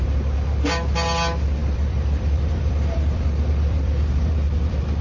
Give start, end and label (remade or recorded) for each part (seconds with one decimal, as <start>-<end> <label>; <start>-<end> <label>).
0.0-1.6 recorded; 1.6-4.3 remade; 4.3-5.0 recorded